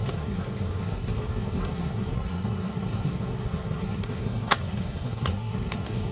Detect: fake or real fake